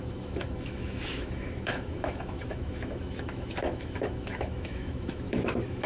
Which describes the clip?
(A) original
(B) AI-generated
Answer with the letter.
B